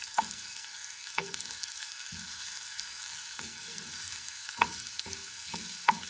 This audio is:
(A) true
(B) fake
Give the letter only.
B